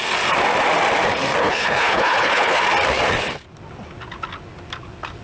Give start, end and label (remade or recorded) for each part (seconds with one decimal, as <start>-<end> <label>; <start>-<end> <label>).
0.0-1.4 recorded; 1.4-2.6 remade; 2.6-5.2 recorded